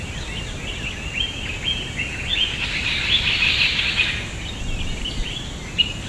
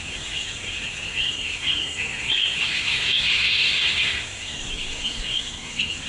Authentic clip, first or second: first